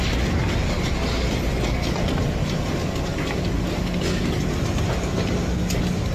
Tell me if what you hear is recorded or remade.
recorded